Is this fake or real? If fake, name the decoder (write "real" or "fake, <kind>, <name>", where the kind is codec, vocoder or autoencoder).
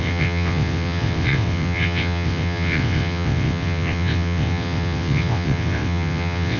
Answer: fake, vocoder, WaveNeXt